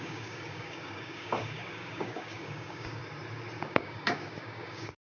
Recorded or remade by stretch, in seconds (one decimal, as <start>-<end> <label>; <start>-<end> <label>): 0.0-3.0 remade; 3.0-3.6 recorded; 3.6-5.0 remade